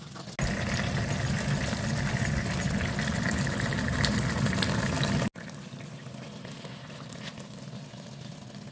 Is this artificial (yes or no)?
no